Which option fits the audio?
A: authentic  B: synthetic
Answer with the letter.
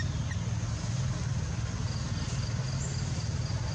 A